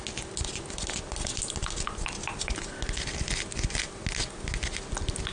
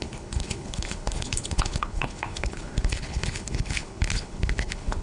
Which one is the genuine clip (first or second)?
first